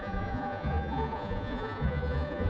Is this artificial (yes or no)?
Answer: yes